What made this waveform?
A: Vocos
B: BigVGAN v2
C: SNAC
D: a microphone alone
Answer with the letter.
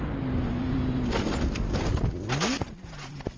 D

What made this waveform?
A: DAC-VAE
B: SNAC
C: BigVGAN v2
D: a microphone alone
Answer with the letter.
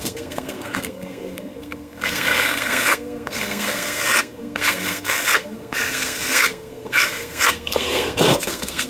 B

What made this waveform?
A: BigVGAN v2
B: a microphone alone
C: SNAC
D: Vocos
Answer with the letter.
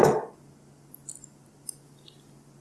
B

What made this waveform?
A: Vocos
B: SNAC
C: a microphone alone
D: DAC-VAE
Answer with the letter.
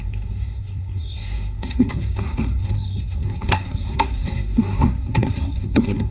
B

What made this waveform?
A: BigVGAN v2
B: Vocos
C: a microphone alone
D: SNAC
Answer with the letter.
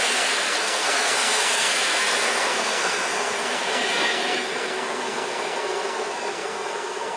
D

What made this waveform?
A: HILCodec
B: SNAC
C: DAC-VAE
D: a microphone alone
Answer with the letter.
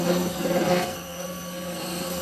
B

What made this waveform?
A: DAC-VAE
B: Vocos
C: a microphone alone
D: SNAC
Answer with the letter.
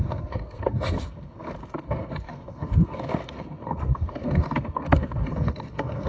D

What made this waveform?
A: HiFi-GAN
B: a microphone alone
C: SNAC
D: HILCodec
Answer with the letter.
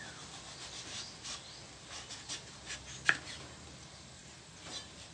B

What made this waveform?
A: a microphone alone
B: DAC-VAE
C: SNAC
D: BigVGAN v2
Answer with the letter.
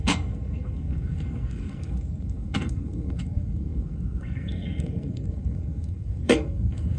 C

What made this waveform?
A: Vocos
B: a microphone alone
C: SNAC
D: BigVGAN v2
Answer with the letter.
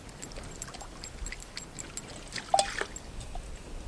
B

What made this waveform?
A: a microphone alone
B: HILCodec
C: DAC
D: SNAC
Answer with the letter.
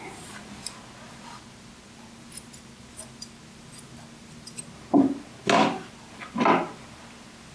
A